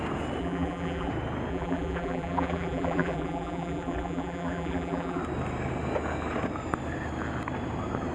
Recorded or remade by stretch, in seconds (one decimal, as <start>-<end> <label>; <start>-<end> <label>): 0.0-0.4 recorded; 0.4-1.1 remade; 1.1-1.5 recorded; 1.5-5.2 remade; 5.2-8.1 recorded